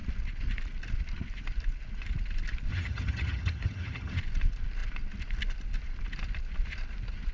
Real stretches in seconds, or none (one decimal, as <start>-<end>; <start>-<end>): 0.0-2.7; 4.2-7.3